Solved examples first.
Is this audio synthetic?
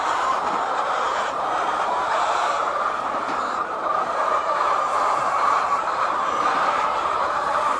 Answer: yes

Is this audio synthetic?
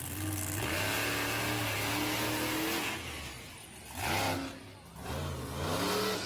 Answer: no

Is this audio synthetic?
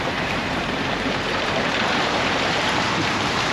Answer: yes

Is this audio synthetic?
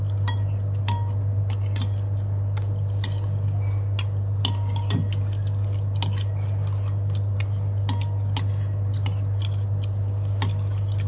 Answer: no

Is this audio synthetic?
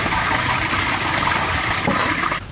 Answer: no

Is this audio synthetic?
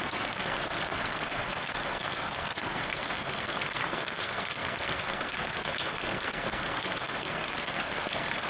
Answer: yes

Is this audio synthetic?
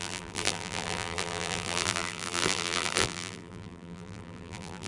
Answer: yes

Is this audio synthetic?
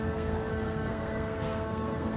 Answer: yes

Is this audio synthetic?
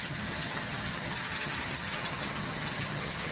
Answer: yes